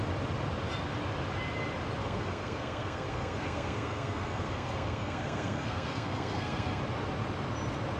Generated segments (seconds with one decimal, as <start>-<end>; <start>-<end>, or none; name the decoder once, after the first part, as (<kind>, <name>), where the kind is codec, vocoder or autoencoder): 2.0-6.8 (codec, SNAC)